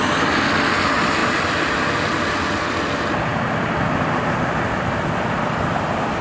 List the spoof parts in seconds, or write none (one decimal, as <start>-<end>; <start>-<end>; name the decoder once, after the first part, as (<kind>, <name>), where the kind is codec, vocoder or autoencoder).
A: none